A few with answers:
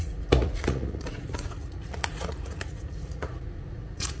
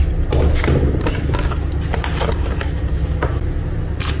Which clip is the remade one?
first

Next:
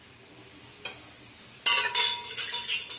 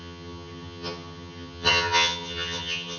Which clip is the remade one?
second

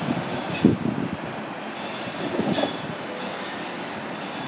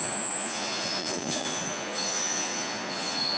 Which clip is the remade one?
second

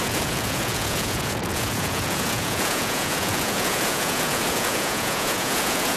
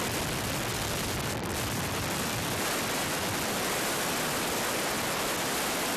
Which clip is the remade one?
first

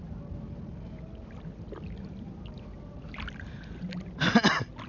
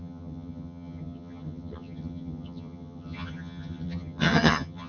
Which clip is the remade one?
second